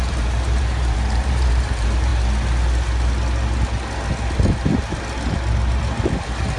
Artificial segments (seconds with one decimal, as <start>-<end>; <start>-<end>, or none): 0.0-2.1; 5.7-6.6